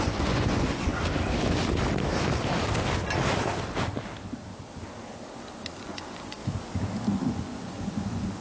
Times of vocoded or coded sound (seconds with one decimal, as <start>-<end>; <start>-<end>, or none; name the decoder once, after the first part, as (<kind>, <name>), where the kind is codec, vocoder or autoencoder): 0.0-0.9 (vocoder, Vocos); 5.8-6.4; 7.1-8.4